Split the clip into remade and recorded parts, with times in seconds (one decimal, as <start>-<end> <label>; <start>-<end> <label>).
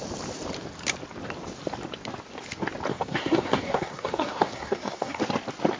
0.0-2.9 recorded; 2.9-5.2 remade; 5.2-5.8 recorded